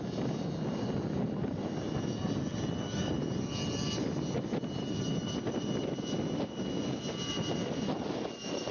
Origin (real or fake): real